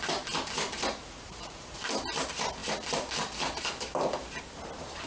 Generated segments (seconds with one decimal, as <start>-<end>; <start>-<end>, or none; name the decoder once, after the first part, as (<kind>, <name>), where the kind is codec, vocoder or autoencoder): 1.0-1.8 (vocoder, Vocos)